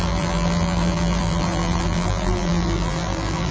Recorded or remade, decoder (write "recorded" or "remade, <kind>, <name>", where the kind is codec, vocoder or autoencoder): remade, vocoder, BigVGAN v2